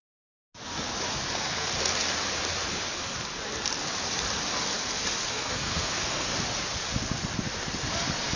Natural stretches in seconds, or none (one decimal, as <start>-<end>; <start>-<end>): 0.4-1.1; 1.7-5.3; 6.3-8.4